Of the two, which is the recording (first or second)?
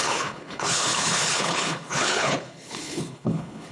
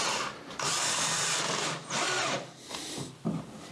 second